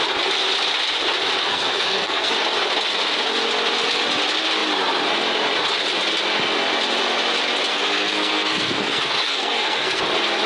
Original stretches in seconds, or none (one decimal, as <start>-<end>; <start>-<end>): 0.0-1.4; 2.3-7.7; 10.0-10.5